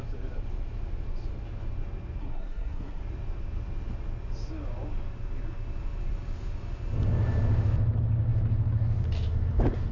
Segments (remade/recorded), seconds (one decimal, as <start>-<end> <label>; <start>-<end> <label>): 0.0-2.2 recorded; 2.2-3.0 remade; 3.0-9.9 recorded